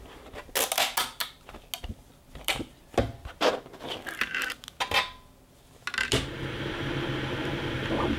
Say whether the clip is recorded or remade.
recorded